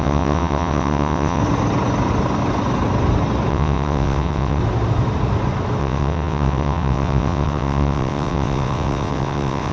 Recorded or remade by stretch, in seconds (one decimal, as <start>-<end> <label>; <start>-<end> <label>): 0.0-1.4 remade; 1.4-3.5 recorded; 3.5-4.6 remade; 4.6-5.8 recorded; 5.8-9.7 remade